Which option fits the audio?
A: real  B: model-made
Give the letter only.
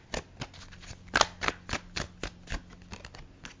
A